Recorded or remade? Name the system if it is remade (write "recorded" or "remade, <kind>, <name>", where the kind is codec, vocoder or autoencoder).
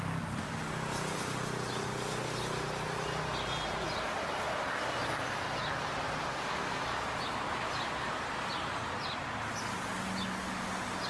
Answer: recorded